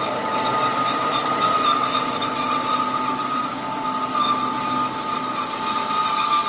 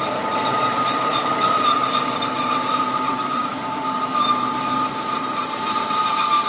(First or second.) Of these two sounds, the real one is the first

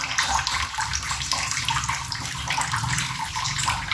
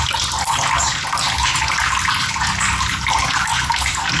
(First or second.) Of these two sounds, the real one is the second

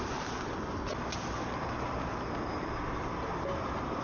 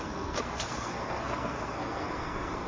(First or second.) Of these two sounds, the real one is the first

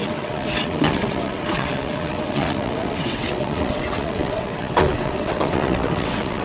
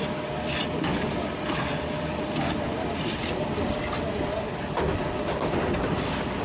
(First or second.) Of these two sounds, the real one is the second